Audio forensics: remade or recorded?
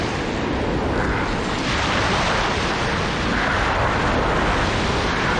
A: recorded